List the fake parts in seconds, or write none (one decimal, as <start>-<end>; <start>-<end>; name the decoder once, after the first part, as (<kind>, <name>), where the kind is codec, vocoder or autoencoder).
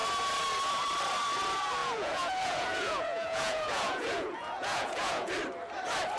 1.8-5.3 (vocoder, Vocos)